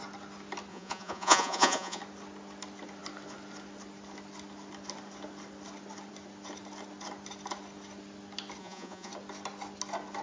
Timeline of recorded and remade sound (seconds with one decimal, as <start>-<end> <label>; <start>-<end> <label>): 0.0-0.7 recorded; 0.7-2.0 remade; 2.0-8.6 recorded; 8.6-9.1 remade; 9.1-10.2 recorded